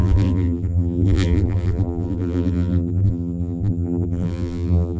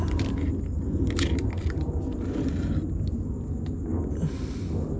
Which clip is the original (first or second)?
second